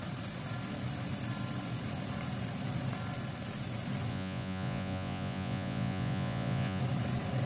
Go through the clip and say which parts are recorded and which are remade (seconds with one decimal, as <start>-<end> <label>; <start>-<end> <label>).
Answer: 0.0-4.1 recorded; 4.1-6.8 remade; 6.8-7.5 recorded